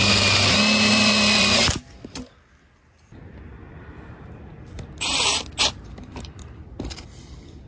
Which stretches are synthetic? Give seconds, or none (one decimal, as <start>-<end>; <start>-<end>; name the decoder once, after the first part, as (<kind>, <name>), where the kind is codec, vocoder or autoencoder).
0.9-1.6 (vocoder, BigVGAN v2); 5.1-7.7